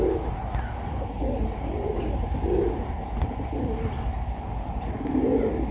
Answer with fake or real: real